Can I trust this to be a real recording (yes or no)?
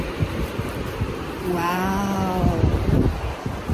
yes